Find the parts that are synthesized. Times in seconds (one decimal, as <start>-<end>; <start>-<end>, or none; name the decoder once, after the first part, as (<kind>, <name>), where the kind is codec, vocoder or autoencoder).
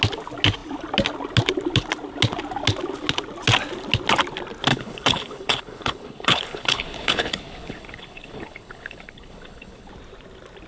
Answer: 4.7-9.9 (codec, HILCodec)